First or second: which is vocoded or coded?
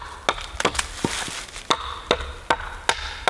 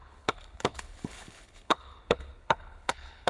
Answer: second